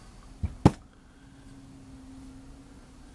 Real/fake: real